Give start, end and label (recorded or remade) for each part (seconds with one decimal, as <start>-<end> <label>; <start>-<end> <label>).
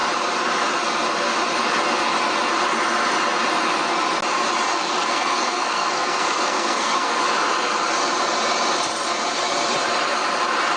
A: 0.0-4.7 recorded; 4.7-7.2 remade; 7.2-10.8 recorded